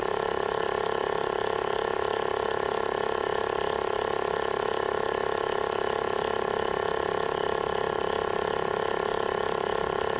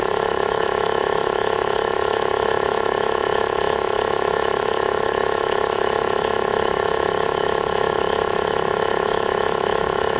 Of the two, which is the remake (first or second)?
second